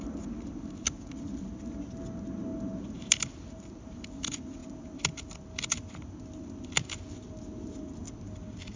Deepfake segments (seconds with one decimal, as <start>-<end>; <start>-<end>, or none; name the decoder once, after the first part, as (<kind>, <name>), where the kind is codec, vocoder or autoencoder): none